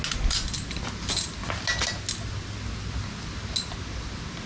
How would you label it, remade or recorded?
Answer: recorded